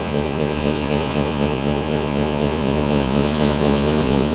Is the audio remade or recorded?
remade